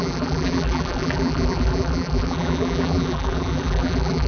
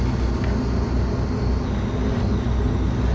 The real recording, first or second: second